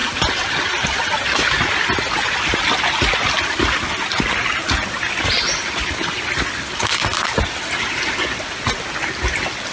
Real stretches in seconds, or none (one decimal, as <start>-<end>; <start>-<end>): 0.0-9.7